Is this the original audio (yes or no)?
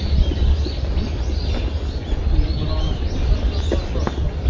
yes